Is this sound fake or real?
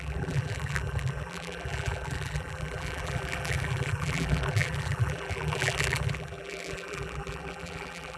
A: fake